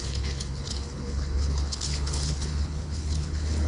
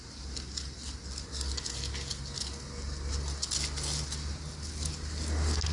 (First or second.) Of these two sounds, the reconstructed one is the first